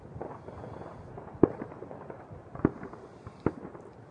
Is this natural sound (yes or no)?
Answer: yes